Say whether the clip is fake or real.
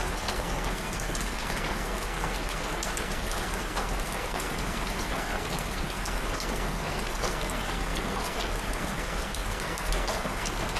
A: fake